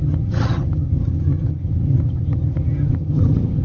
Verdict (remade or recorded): remade